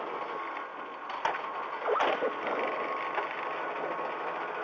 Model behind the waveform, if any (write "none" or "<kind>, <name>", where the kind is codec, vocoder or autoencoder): none